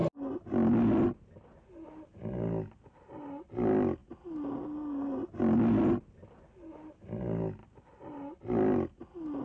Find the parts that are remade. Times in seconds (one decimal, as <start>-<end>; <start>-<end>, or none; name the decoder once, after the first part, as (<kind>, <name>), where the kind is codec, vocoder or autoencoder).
none

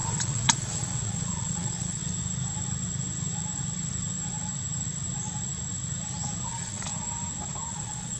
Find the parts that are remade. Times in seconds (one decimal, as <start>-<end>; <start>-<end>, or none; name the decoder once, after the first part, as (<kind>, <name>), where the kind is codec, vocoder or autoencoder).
0.0-2.0 (vocoder, Vocos); 6.5-6.9; 7.7-8.2

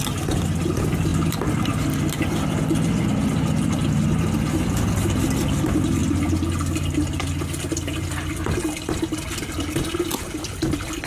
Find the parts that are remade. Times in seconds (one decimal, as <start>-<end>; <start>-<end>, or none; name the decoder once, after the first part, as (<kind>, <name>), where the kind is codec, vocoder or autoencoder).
none

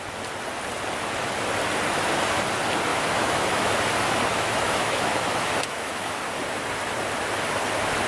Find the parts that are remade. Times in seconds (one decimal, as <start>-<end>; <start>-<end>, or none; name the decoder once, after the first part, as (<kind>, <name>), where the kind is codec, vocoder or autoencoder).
2.9-3.7 (autoencoder, DAC-VAE); 4.3-6.2

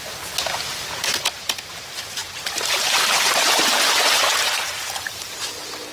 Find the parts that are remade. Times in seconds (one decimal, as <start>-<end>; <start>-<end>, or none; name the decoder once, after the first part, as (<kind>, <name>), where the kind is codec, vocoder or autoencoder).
0.0-5.9 (vocoder, BigVGAN v2)

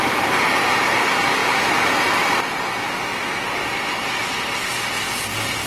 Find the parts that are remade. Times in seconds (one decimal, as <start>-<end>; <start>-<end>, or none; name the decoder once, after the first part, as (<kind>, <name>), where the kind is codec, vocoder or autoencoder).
1.4-2.5 (vocoder, BigVGAN v2); 3.1-4.9